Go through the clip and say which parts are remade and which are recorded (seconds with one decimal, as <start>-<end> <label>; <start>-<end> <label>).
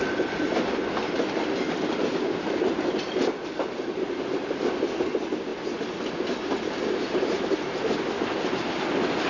0.0-9.3 recorded